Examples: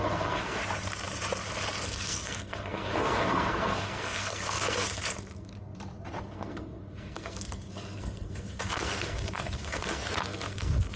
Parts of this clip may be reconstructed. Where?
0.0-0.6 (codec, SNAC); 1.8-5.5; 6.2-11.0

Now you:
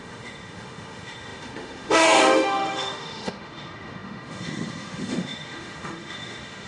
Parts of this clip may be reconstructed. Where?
0.0-6.7 (autoencoder, DAC-VAE)

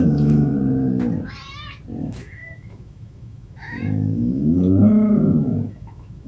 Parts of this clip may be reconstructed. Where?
0.0-0.5 (autoencoder, DAC-VAE); 2.0-6.3

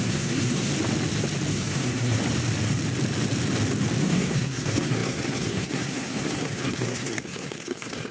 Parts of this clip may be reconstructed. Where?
0.0-0.7 (codec, SNAC); 1.5-2.2; 4.0-8.1